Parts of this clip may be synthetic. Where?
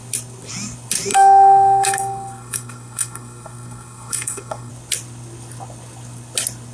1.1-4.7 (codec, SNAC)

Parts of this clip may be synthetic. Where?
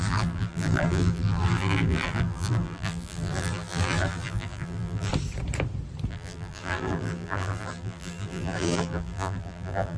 0.0-5.1 (vocoder, BigVGAN v2); 6.1-10.0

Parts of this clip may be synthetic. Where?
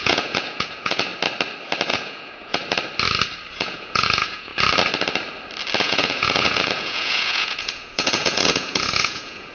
0.0-1.1 (vocoder, Vocos); 1.9-2.6; 3.5-4.5; 5.8-9.5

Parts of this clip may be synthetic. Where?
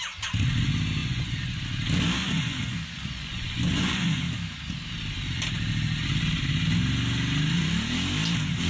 1.0-1.6 (vocoder, Vocos); 2.2-4.2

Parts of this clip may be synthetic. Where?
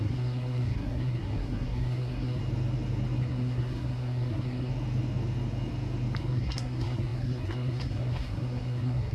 0.0-2.4 (codec, SNAC); 3.2-4.7; 6.2-9.1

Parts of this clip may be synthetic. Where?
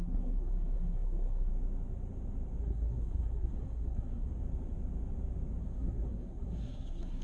0.0-1.5 (codec, SNAC); 2.6-4.3; 5.6-7.2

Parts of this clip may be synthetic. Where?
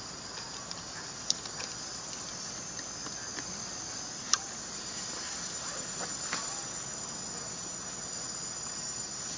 3.9-4.9 (vocoder, BigVGAN v2)